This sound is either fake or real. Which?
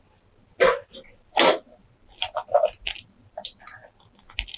real